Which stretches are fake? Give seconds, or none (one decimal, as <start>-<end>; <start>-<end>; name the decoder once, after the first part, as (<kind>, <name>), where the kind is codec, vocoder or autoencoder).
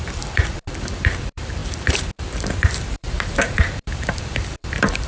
0.0-5.1 (vocoder, BigVGAN v2)